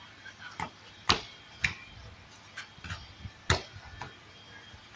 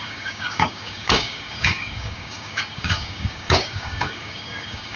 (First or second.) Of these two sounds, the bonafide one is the first